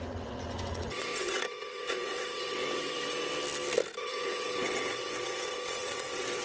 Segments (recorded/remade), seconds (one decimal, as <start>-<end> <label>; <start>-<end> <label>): 0.0-3.3 remade; 3.3-4.0 recorded; 4.0-6.4 remade